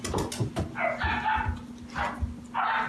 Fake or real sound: real